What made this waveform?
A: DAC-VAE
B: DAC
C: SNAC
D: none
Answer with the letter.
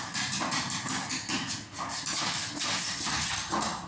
D